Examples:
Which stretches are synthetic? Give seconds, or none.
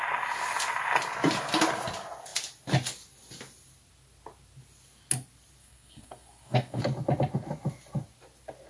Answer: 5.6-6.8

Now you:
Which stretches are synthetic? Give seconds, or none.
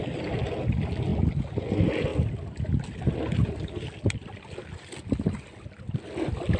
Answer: none